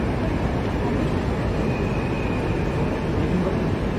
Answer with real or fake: real